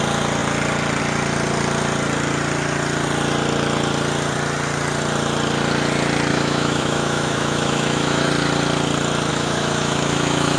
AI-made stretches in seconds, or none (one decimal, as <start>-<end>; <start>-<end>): 6.3-8.3; 9.3-10.6